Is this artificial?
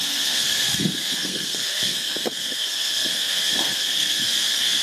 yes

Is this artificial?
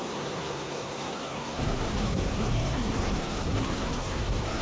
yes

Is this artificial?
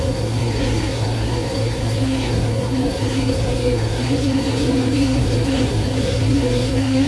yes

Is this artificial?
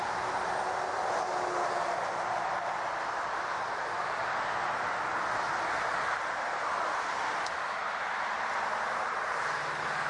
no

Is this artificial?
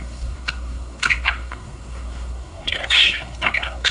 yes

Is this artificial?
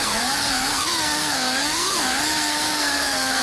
yes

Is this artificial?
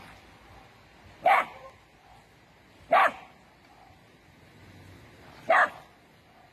no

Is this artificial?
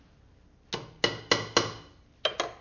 no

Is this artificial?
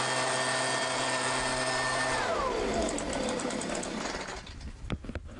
no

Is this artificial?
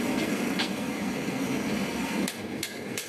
yes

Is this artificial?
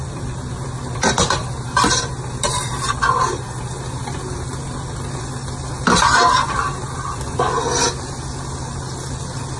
no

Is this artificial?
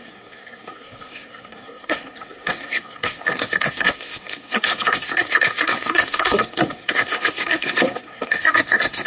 yes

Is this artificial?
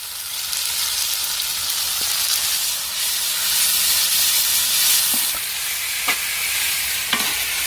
no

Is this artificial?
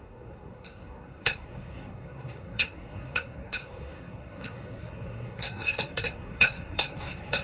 yes